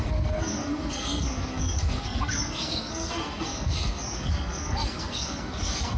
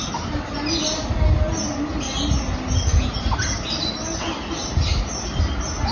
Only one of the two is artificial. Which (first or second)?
first